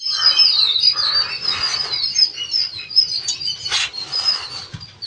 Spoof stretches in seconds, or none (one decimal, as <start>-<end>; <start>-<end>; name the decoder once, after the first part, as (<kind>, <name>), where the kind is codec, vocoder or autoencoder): none